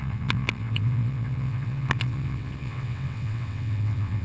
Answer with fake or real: fake